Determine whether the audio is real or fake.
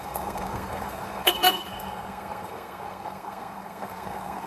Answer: fake